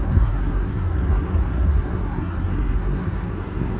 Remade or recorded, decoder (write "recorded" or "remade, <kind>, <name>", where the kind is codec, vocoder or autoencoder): remade, codec, SNAC